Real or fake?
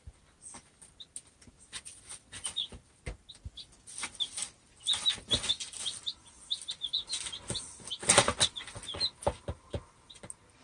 real